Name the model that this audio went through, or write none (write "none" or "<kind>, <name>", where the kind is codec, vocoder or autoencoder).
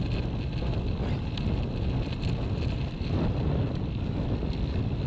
none